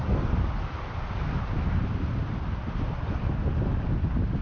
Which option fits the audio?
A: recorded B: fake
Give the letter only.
A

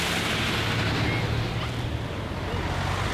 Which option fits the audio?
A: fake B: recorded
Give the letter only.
B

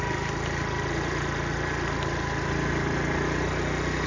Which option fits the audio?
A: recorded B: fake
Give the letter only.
A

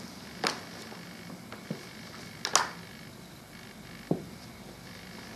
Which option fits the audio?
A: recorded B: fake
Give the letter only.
A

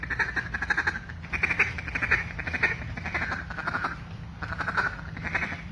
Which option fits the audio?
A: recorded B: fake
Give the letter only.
A